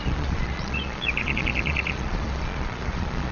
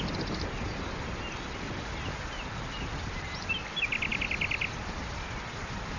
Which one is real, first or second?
second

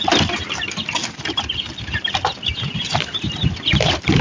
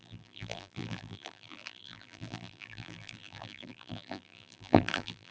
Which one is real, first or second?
first